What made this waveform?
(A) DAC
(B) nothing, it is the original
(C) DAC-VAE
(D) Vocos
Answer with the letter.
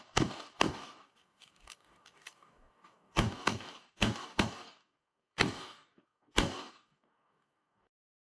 A